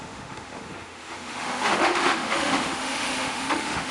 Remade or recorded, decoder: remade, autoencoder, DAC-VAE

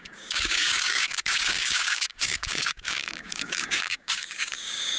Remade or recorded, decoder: remade, codec, DAC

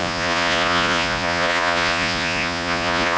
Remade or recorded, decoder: remade, vocoder, Vocos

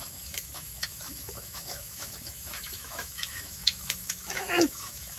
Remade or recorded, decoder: remade, autoencoder, DAC-VAE